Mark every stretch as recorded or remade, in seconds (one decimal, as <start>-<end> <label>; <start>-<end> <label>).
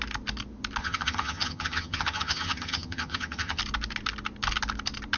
0.0-0.8 recorded; 0.8-3.6 remade; 3.6-5.2 recorded